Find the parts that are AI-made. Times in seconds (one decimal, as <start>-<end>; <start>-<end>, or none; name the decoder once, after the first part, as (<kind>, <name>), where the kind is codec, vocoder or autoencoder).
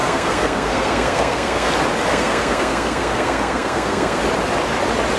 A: 0.0-1.7 (codec, SNAC); 2.1-4.2